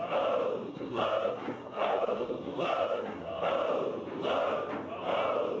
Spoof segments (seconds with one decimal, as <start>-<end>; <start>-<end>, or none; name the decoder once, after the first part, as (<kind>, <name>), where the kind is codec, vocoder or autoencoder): 0.7-3.5 (codec, SNAC)